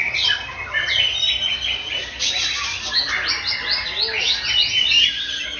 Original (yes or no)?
yes